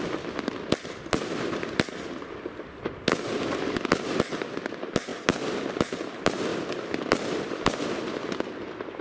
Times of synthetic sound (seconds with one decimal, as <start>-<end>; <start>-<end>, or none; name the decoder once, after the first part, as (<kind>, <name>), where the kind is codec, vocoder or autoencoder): none